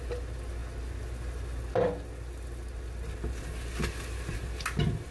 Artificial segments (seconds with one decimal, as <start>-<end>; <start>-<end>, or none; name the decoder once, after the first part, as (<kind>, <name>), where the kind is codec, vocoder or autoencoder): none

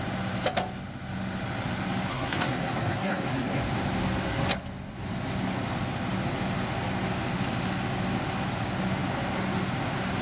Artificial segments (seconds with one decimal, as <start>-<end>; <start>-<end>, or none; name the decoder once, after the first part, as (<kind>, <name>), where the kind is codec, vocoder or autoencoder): 2.1-3.6 (codec, SNAC)

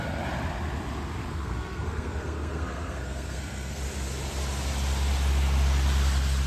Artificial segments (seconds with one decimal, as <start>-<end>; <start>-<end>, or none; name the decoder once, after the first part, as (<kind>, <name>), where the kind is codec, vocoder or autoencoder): 1.2-3.8 (codec, SNAC)

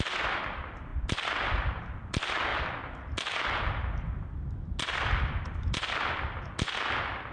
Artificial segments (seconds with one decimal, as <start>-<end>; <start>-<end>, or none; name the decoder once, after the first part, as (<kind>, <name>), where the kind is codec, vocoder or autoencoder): 0.0-7.3 (vocoder, BigVGAN v2)

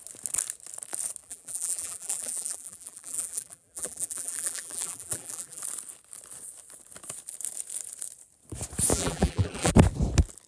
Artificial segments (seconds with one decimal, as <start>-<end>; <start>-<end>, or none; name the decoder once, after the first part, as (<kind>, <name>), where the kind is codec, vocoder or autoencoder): 1.2-5.6 (vocoder, BigVGAN v2); 8.9-9.7